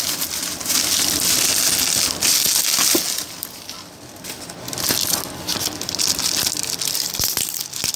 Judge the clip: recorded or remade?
recorded